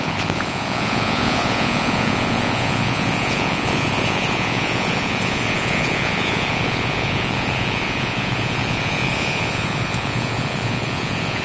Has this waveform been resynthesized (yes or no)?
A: yes